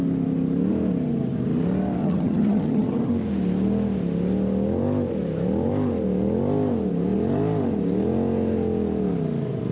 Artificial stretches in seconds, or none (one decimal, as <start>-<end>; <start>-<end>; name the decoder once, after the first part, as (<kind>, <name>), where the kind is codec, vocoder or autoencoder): 2.0-3.1 (vocoder, HiFi-GAN)